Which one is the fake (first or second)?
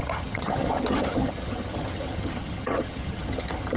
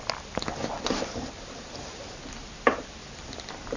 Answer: first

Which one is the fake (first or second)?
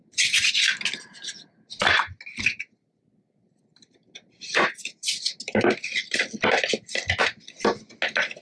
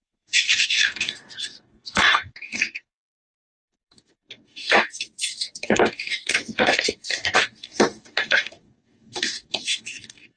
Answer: second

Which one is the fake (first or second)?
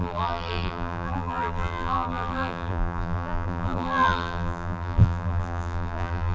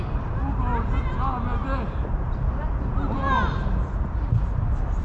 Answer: first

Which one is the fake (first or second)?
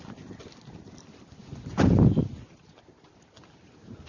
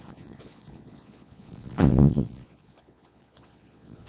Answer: second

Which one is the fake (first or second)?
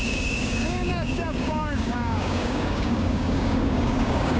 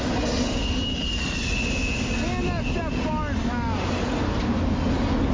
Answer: first